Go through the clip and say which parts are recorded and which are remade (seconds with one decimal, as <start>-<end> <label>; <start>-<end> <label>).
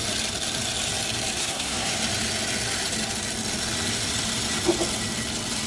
0.0-1.4 recorded; 1.4-1.9 remade; 1.9-5.7 recorded